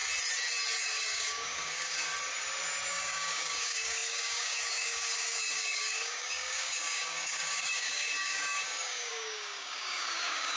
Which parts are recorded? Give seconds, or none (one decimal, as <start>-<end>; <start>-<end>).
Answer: 0.0-0.8; 2.1-2.9